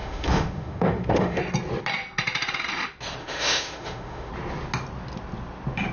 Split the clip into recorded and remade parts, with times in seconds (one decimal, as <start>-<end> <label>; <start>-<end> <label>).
0.0-1.4 remade; 1.4-3.2 recorded; 3.2-4.3 remade; 4.3-5.9 recorded